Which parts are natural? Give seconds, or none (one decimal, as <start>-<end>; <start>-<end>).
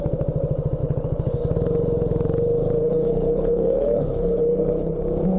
0.0-0.8; 1.4-2.8; 5.0-5.4